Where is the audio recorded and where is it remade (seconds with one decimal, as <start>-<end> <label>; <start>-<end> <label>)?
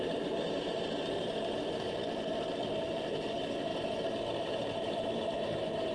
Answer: 0.0-2.0 remade; 2.0-2.8 recorded; 2.8-3.7 remade; 3.7-4.4 recorded; 4.4-5.9 remade